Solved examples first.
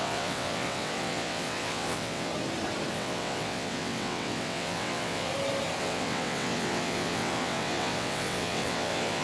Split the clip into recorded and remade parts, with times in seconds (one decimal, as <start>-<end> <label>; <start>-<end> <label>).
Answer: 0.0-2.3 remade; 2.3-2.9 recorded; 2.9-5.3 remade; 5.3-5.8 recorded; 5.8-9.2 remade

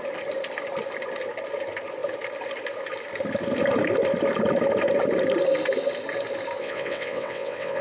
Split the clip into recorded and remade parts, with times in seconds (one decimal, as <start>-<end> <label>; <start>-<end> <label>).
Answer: 0.0-6.6 recorded; 6.6-7.8 remade

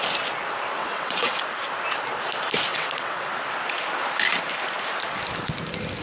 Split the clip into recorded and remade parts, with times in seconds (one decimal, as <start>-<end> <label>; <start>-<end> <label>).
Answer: 0.0-0.8 recorded; 0.8-1.4 remade; 1.4-2.7 recorded; 2.7-3.2 remade; 3.2-6.0 recorded